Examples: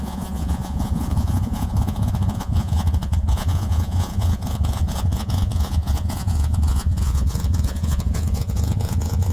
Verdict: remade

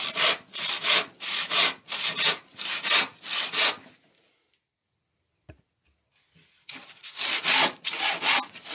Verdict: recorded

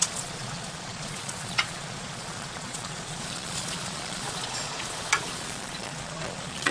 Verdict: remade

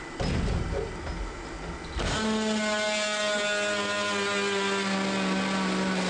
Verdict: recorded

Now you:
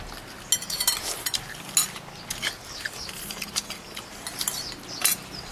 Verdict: recorded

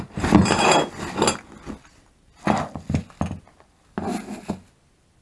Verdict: recorded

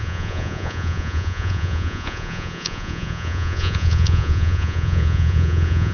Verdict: remade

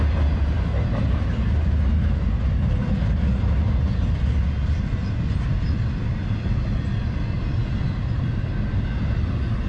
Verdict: recorded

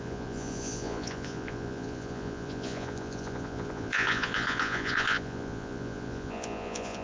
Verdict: remade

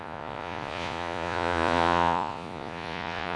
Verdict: remade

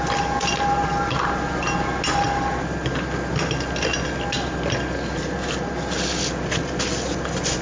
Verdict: recorded